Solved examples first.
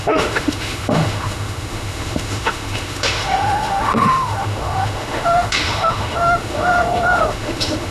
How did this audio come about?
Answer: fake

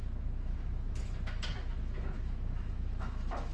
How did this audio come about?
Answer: fake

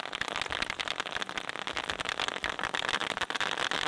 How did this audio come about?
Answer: real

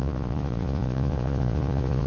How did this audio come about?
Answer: fake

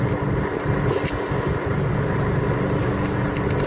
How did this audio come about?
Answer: real